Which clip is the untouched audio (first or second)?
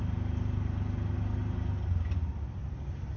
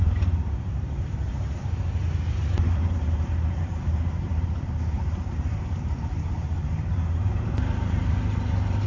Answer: first